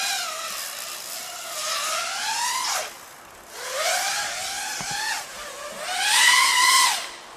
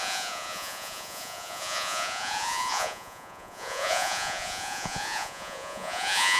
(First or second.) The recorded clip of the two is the first